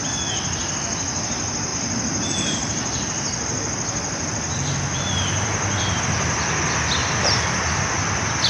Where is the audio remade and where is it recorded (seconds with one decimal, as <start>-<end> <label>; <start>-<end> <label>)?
0.0-1.7 recorded; 1.7-6.0 remade; 6.0-7.0 recorded; 7.0-7.8 remade; 7.8-8.5 recorded